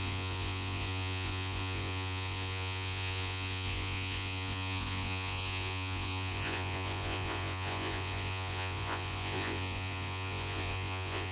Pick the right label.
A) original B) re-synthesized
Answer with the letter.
B